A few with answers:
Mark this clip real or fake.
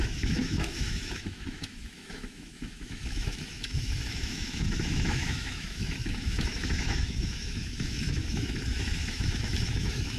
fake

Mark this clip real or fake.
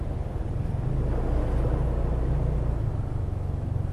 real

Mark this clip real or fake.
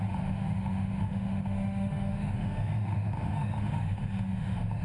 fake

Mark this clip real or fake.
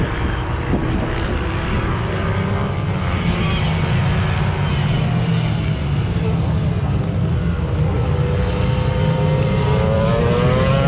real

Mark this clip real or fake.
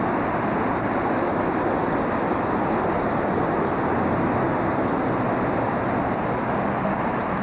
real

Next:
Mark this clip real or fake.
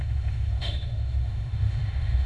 fake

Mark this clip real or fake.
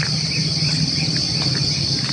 real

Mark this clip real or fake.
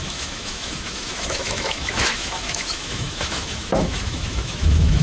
fake